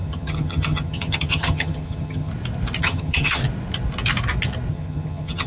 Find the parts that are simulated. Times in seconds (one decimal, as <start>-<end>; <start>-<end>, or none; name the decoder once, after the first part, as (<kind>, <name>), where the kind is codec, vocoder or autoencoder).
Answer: 0.0-2.3 (vocoder, HiFi-GAN); 2.8-3.4; 4.7-5.5